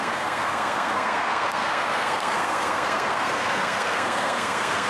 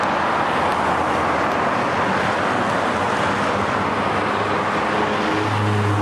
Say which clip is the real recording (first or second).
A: second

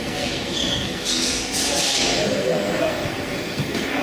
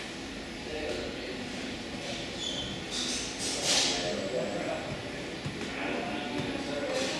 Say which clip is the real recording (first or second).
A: second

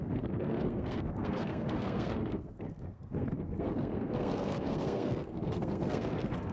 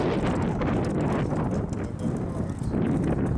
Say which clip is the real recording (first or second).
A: second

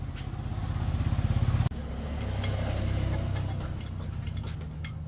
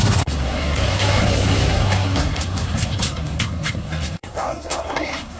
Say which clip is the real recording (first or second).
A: first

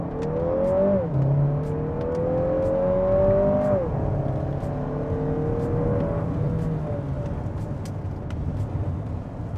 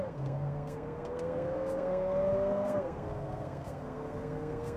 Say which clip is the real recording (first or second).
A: first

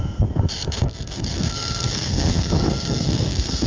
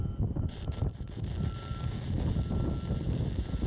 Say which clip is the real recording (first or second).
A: second